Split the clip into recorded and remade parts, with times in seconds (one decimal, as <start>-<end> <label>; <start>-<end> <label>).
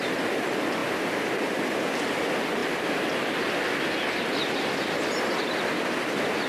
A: 0.0-6.5 recorded